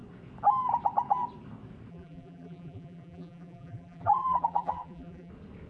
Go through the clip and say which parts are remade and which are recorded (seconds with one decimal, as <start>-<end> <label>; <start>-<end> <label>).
0.0-1.9 recorded; 1.9-5.3 remade; 5.3-5.7 recorded